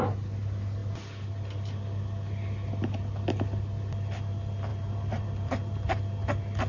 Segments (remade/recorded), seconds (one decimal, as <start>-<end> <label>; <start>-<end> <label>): 0.0-4.7 recorded; 4.7-5.5 remade; 5.5-6.7 recorded